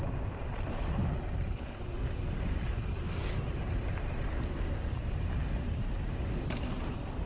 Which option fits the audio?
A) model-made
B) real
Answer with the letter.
B